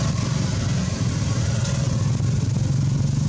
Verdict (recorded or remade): recorded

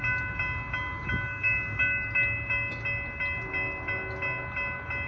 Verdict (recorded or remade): recorded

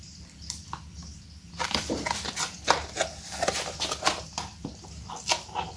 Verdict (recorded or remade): recorded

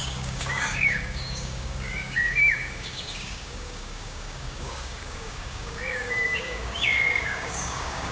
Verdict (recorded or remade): remade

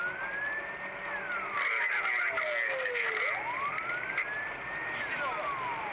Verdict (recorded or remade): recorded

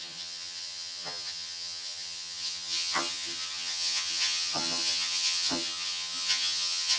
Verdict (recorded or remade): remade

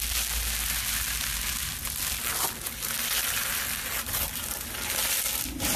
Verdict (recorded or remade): recorded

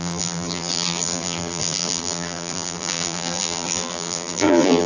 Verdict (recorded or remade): remade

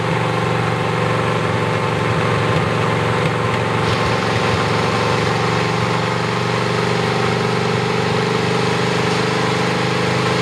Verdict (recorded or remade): recorded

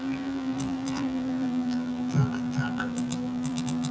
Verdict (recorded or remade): remade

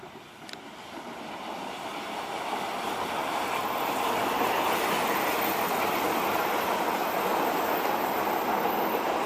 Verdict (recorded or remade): recorded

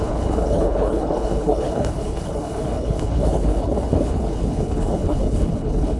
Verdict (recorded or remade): remade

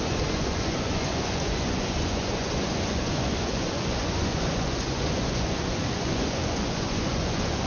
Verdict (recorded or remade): remade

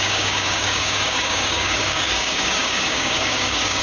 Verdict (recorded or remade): remade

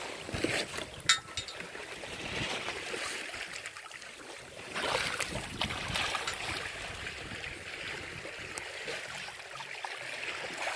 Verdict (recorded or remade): recorded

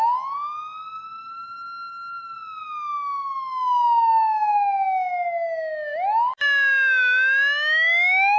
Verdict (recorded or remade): recorded